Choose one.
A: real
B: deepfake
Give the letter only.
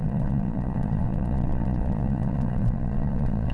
B